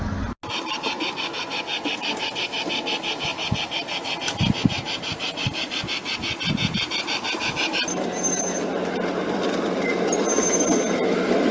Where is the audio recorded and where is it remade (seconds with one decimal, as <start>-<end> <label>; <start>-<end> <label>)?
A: 0.0-11.5 recorded